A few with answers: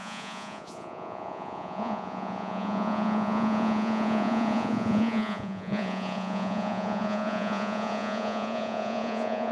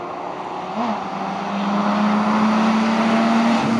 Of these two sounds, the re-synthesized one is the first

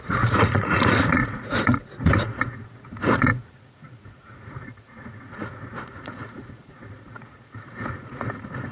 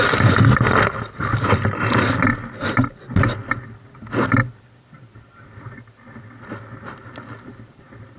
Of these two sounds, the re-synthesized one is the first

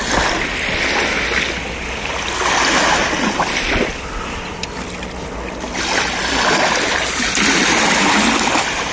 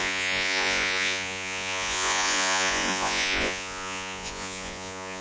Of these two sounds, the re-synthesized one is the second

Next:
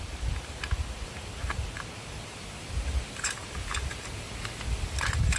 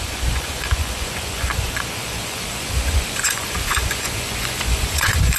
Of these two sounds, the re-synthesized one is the second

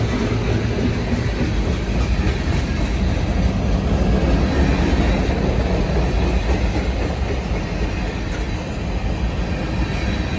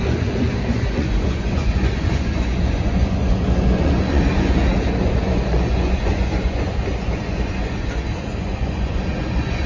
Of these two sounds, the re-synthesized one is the second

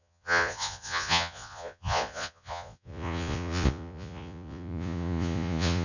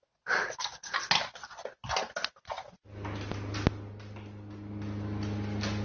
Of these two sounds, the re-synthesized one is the first